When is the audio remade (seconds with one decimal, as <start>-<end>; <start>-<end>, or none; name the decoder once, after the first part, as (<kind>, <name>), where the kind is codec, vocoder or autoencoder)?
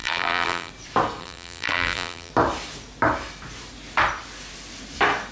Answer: 0.0-0.7 (vocoder, BigVGAN v2); 1.2-2.3